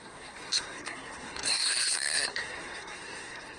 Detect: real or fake fake